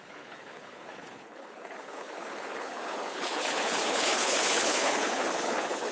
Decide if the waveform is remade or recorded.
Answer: remade